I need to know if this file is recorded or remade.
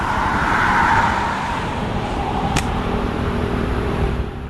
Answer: remade